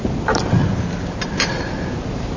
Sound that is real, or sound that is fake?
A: real